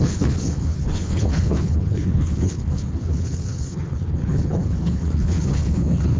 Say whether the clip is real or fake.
fake